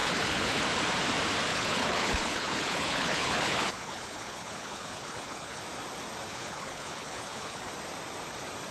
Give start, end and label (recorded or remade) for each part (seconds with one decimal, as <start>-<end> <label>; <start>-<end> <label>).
0.0-0.6 remade; 0.6-1.5 recorded; 1.5-5.6 remade; 5.6-6.3 recorded; 6.3-7.7 remade; 7.7-8.7 recorded